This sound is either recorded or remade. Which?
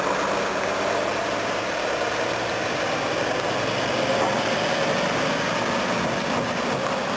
recorded